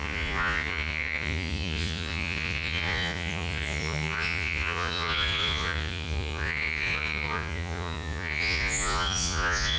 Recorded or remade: remade